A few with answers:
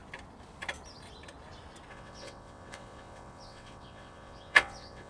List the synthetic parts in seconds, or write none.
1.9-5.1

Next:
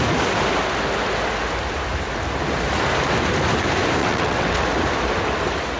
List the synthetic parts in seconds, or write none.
4.0-4.6